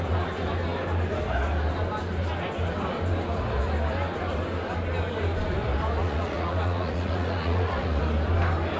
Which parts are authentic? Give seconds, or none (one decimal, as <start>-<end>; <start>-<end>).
0.0-6.0; 8.0-8.8